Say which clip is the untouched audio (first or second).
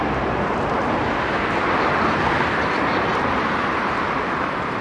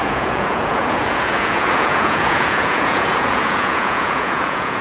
first